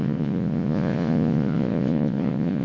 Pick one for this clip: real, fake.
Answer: fake